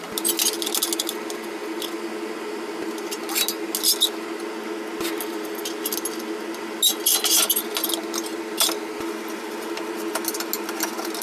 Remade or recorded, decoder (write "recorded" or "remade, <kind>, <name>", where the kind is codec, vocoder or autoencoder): recorded